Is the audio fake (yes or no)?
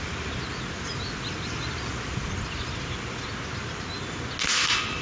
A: no